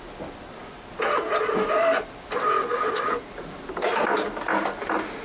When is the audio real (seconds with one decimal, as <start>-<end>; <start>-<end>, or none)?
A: 0.0-5.2